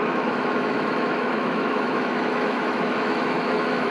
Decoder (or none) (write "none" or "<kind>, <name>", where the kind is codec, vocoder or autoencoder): autoencoder, DAC-VAE